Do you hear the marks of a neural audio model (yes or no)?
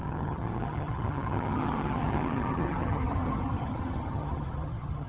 yes